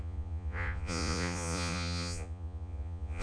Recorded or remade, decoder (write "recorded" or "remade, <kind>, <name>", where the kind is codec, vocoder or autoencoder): remade, vocoder, Vocos